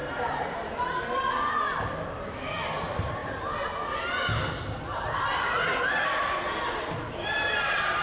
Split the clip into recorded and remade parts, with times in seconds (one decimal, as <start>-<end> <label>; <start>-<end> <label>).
0.0-0.7 remade; 0.7-8.0 recorded